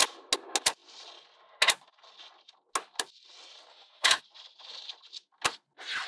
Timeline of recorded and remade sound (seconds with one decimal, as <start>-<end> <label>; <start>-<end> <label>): 0.0-3.7 recorded; 3.7-4.2 remade; 4.2-6.1 recorded